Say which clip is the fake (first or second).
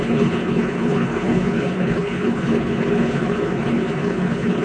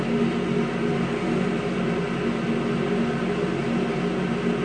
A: first